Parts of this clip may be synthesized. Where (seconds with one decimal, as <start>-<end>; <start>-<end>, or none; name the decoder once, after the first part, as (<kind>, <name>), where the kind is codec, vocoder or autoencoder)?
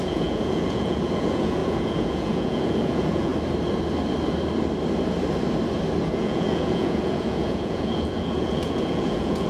0.0-3.3 (vocoder, Vocos); 6.0-9.5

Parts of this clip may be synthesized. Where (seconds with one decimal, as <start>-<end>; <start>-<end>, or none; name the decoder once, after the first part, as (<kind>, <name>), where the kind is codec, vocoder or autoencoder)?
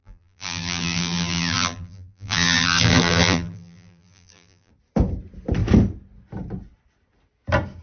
0.0-4.7 (vocoder, BigVGAN v2)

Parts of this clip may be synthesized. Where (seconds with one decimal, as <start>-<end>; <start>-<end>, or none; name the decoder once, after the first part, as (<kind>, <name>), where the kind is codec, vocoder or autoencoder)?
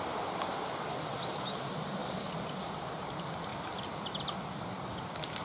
none